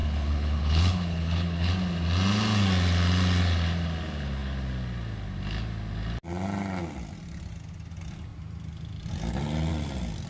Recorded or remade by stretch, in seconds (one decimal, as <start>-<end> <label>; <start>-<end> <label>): 0.0-1.7 remade; 1.7-10.3 recorded